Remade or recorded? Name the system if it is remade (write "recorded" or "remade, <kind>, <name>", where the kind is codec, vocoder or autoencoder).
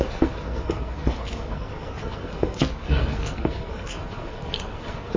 remade, codec, SNAC